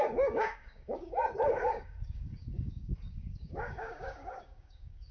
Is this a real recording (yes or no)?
no